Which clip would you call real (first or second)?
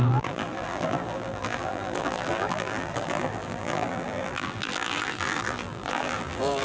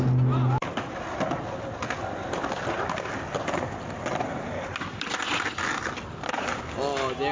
second